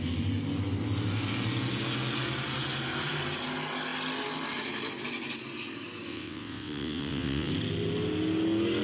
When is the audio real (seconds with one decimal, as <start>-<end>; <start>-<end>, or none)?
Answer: 0.0-6.1; 7.5-8.8